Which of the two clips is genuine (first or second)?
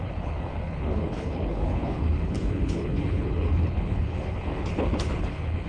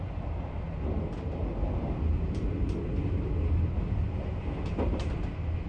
second